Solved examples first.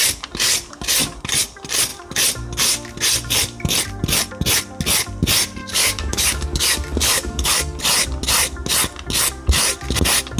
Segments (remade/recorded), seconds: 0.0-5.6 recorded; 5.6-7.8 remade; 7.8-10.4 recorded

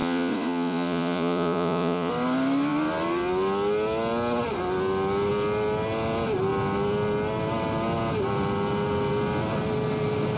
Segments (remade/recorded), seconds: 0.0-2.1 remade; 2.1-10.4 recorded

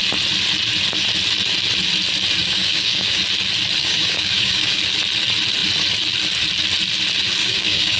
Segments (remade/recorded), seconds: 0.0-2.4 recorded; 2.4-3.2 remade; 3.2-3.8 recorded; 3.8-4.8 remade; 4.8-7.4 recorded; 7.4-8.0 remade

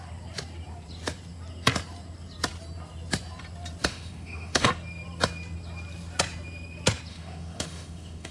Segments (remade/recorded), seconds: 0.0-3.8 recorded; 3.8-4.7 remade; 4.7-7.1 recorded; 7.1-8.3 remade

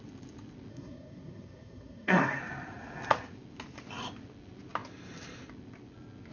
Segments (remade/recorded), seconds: 0.0-0.7 recorded; 0.7-2.4 remade; 2.4-6.3 recorded

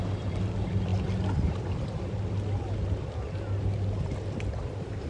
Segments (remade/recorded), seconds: 0.0-0.9 remade; 0.9-4.0 recorded; 4.0-5.1 remade

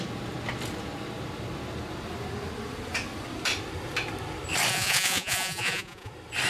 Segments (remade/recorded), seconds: 0.0-4.7 recorded; 4.7-6.1 remade; 6.1-6.5 recorded

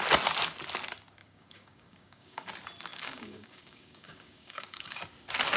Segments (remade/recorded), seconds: 0.0-1.2 recorded; 1.2-2.5 remade; 2.5-2.9 recorded; 2.9-5.0 remade; 5.0-5.6 recorded